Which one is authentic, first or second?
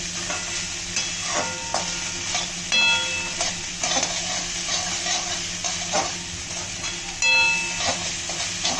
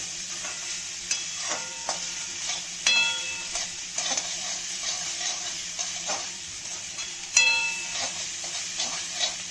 first